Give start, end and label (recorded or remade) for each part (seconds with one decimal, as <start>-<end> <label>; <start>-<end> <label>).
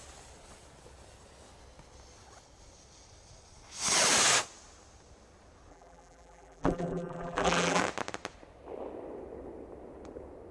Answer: 0.0-5.7 recorded; 5.7-7.8 remade; 7.8-10.5 recorded